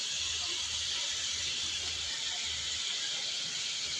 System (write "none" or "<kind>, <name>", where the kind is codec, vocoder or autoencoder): vocoder, BigVGAN v2